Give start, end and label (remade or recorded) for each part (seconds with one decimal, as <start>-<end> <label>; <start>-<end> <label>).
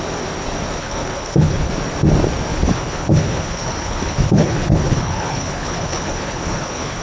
0.0-0.8 recorded; 0.8-1.7 remade; 1.7-2.5 recorded; 2.5-7.0 remade